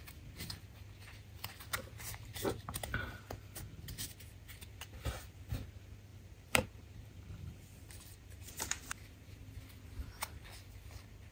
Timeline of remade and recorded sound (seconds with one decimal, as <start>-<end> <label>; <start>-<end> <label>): 0.0-6.1 recorded; 6.1-8.5 remade; 8.5-11.3 recorded